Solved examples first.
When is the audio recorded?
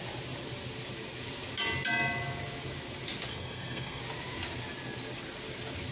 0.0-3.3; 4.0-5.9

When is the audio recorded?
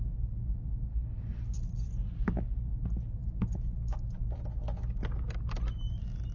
0.0-0.9; 1.4-6.3